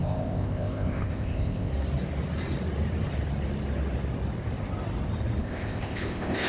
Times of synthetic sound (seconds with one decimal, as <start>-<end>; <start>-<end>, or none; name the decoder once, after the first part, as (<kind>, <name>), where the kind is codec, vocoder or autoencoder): 0.0-1.7 (codec, ZipCodec); 5.4-6.5

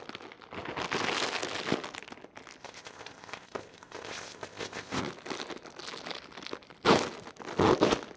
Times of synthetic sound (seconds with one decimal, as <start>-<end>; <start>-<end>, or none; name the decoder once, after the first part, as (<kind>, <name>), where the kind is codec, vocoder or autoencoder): 2.6-5.0 (codec, ZipCodec)

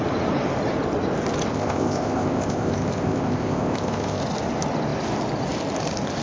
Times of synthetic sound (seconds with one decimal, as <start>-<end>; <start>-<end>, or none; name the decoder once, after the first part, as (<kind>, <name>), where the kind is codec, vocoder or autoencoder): 1.5-4.2 (codec, ZipCodec)

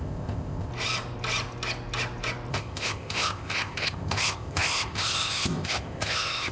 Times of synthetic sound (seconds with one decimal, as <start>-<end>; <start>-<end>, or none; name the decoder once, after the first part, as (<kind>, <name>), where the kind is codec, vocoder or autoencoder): 0.0-0.7 (codec, ZipCodec); 2.5-6.5